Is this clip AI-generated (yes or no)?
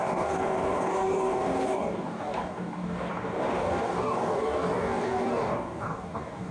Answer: yes